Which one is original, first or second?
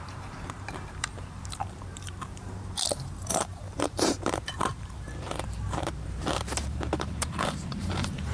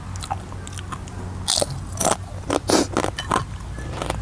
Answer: second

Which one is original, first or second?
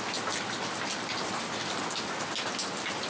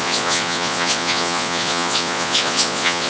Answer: first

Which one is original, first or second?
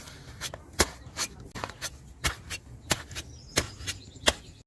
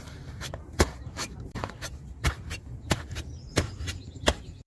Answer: first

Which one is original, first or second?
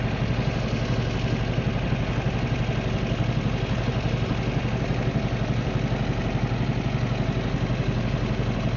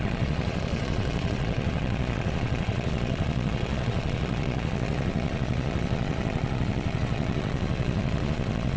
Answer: first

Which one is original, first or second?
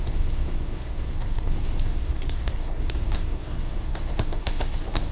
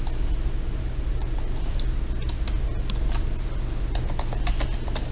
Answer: second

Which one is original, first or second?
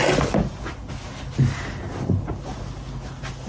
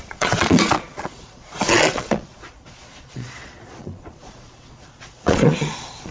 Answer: first